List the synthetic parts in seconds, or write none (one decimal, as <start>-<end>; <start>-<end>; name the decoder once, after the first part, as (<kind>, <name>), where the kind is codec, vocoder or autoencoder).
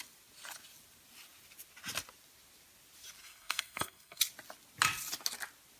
3.2-4.2 (codec, SNAC)